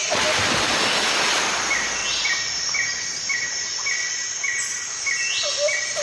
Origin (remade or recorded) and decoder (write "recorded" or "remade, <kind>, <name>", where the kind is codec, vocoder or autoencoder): recorded